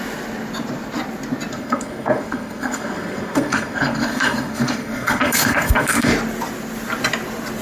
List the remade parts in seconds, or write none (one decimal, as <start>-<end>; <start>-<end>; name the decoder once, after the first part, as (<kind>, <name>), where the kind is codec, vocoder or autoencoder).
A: 1.5-6.1 (codec, SNAC)

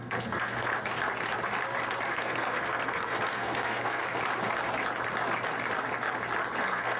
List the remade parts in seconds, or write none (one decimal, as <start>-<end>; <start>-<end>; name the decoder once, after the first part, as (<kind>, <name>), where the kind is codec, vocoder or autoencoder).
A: 0.0-0.7 (codec, SNAC); 2.1-4.0; 6.6-7.0

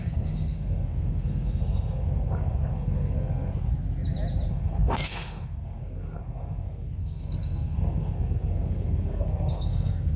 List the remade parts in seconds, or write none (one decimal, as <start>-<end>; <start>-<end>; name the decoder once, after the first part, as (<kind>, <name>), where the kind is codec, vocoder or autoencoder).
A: 0.0-3.7 (codec, SNAC); 4.5-10.2

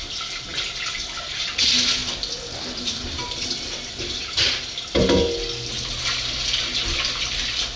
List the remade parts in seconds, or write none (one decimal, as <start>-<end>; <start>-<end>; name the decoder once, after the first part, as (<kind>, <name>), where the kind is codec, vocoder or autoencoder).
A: none

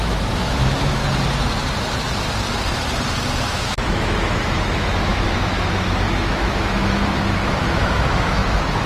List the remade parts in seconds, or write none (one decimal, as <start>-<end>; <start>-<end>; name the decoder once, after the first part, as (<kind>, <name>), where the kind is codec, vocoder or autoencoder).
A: 0.0-1.0 (autoencoder, DAC-VAE); 3.5-8.9

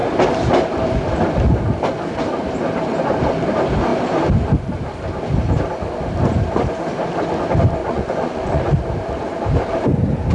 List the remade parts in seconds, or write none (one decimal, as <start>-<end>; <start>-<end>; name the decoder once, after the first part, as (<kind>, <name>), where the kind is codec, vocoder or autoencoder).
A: 7.8-8.6 (vocoder, Vocos)